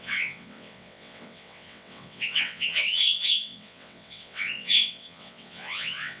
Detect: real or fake fake